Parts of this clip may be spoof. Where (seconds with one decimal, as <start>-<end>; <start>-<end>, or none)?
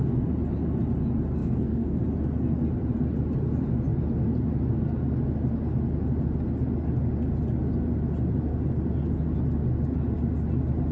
1.4-2.0